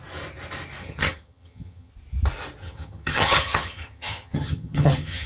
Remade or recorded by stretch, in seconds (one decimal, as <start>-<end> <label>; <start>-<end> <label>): 0.0-0.8 recorded; 0.8-1.9 remade; 1.9-2.6 recorded; 2.6-5.3 remade